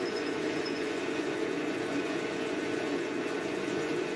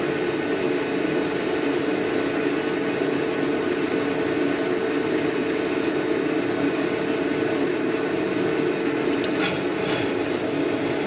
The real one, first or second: second